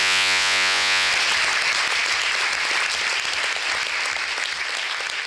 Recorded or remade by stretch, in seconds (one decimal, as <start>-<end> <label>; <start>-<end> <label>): 0.0-1.1 remade; 1.1-5.3 recorded